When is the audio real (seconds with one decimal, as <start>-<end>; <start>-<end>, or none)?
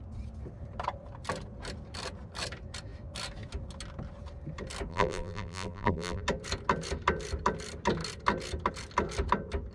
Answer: 0.0-4.9; 6.2-9.7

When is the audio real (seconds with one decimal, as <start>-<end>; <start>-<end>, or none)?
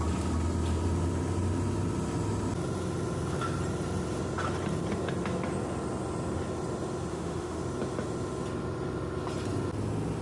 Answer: 0.0-7.1; 7.6-10.2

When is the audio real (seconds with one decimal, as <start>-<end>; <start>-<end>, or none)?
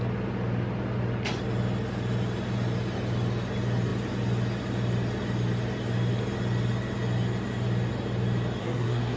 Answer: 0.0-8.6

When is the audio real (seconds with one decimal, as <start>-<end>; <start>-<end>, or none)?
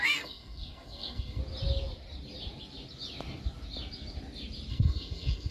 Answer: 1.4-4.7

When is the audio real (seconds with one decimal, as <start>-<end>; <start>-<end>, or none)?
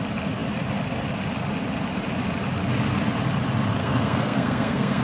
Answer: 0.0-3.8